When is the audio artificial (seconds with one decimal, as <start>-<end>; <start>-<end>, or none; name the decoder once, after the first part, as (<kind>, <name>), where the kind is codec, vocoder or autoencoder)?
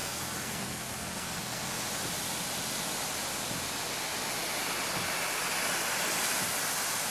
0.0-1.7 (codec, SNAC)